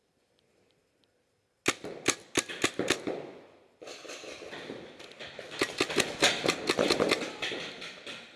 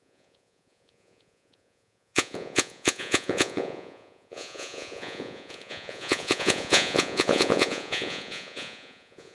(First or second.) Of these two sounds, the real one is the first